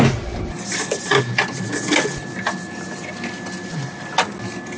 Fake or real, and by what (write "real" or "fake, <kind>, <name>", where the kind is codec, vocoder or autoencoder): real